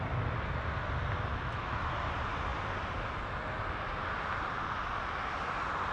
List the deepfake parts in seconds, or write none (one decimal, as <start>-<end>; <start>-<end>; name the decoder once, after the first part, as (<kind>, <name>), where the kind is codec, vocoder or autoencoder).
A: 1.3-1.9 (autoencoder, DAC-VAE)